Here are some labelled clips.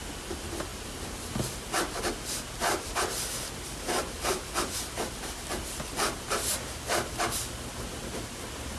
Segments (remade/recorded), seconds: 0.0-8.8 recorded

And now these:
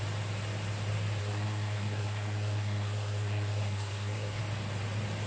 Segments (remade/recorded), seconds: 0.0-1.2 recorded; 1.2-4.4 remade; 4.4-5.3 recorded

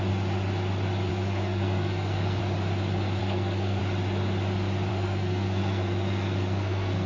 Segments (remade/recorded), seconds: 0.0-1.1 recorded; 1.1-2.4 remade; 2.4-3.2 recorded; 3.2-3.8 remade; 3.8-4.9 recorded; 4.9-7.1 remade

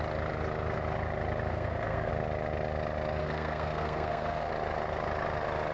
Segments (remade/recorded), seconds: 0.0-1.5 recorded; 1.5-2.1 remade; 2.1-3.2 recorded; 3.2-4.5 remade; 4.5-5.7 recorded

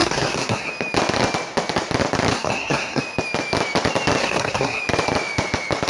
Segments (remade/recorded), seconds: 0.0-0.7 remade; 0.7-2.3 recorded; 2.3-3.0 remade; 3.0-4.2 recorded; 4.2-4.8 remade; 4.8-5.9 recorded